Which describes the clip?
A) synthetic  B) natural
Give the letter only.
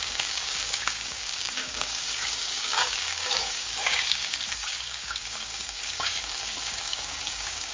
A